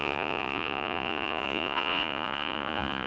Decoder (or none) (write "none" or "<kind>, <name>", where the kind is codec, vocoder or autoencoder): vocoder, Vocos